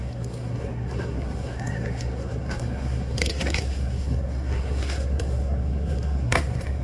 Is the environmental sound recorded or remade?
remade